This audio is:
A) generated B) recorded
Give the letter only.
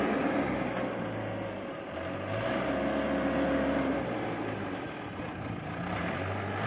B